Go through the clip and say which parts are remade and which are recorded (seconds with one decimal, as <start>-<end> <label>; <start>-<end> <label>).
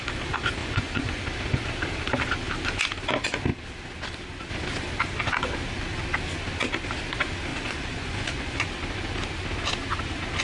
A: 0.0-0.6 recorded; 0.6-1.2 remade; 1.2-7.5 recorded; 7.5-8.7 remade; 8.7-10.4 recorded